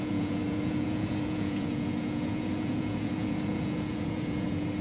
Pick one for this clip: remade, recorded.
remade